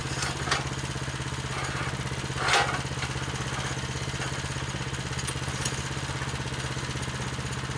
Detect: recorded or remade recorded